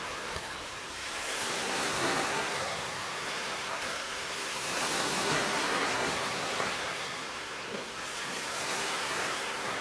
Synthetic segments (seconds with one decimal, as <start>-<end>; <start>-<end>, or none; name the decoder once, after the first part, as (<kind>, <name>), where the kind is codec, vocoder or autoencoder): 0.0-9.8 (codec, SNAC)